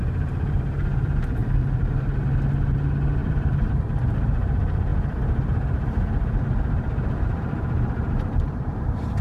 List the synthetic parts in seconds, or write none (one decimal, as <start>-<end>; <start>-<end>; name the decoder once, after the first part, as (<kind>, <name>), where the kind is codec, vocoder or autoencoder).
1.4-2.1 (vocoder, BigVGAN v2); 3.2-4.0